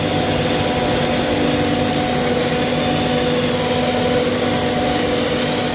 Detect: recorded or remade recorded